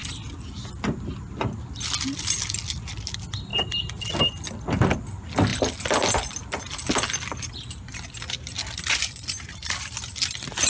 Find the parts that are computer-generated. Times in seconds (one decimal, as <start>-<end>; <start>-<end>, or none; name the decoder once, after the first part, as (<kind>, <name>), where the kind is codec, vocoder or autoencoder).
none